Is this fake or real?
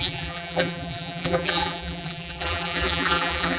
fake